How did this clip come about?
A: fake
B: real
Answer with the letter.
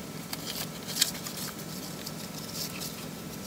B